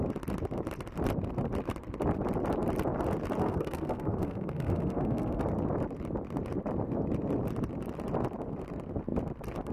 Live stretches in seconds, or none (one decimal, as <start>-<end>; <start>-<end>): 0.0-3.4; 5.4-9.7